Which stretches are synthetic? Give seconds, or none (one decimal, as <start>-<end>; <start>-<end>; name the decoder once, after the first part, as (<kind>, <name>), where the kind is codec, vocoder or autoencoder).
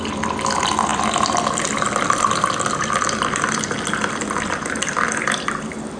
none